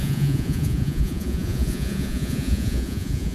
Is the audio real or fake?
fake